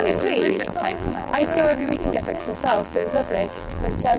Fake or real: fake